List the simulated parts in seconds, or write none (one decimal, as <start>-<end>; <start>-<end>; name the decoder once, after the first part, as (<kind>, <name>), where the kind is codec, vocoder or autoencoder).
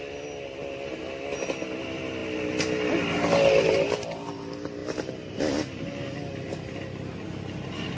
none